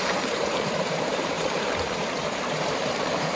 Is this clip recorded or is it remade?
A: remade